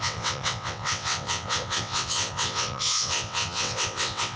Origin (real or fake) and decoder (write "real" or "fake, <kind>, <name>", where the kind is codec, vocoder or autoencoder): fake, vocoder, WaveNeXt